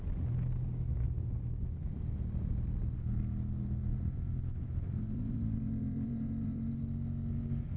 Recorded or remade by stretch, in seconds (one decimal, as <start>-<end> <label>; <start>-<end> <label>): 0.0-3.9 recorded; 3.9-6.7 remade; 6.7-7.8 recorded